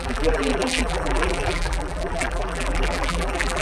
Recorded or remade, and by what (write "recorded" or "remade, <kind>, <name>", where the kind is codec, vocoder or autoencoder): remade, vocoder, BigVGAN v2